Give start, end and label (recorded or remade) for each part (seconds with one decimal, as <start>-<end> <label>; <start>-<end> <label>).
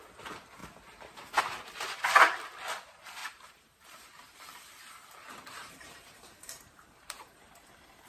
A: 0.0-3.2 recorded; 3.2-8.1 remade